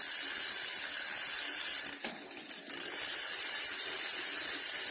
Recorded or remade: recorded